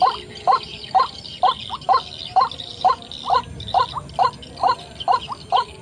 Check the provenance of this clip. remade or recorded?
recorded